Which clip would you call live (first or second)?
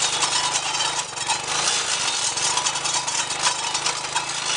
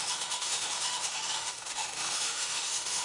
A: first